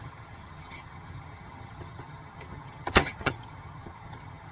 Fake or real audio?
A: fake